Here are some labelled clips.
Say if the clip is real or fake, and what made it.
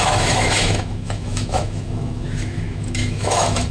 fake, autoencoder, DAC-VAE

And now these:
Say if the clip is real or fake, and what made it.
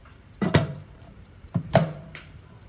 fake, vocoder, BigVGAN v2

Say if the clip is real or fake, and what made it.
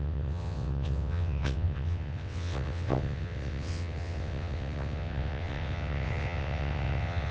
fake, vocoder, WaveNeXt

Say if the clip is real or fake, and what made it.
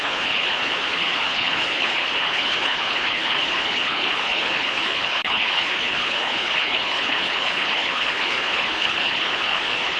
fake, codec, HILCodec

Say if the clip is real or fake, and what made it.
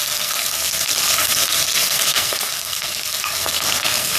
fake, codec, SNAC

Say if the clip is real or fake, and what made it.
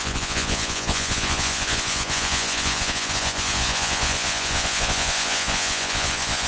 fake, vocoder, Vocos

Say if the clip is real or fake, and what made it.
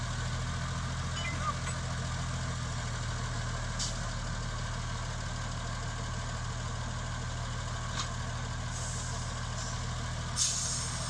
real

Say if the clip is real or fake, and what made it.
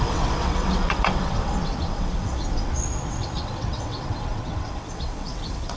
fake, vocoder, WaveNeXt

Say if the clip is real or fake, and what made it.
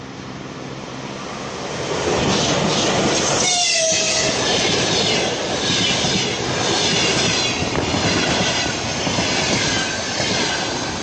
real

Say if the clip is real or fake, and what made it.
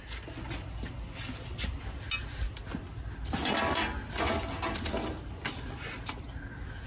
real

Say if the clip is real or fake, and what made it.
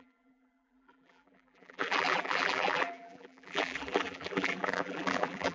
fake, vocoder, BigVGAN v2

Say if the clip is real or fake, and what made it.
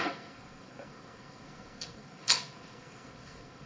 fake, codec, SNAC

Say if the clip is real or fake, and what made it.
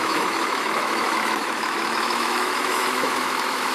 fake, autoencoder, DAC-VAE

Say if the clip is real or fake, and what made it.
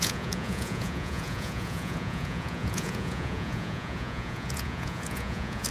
fake, vocoder, Vocos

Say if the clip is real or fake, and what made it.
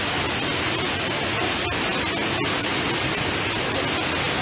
real